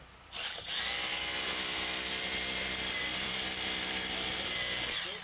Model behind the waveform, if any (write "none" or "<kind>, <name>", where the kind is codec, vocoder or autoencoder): vocoder, BigVGAN v2